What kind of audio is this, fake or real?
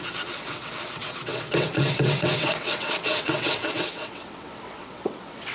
fake